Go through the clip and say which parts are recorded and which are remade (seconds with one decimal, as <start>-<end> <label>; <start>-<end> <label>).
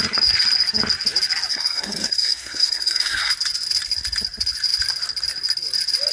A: 0.0-1.5 recorded; 1.5-3.3 remade; 3.3-6.1 recorded